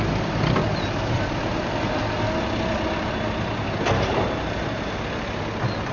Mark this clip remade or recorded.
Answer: recorded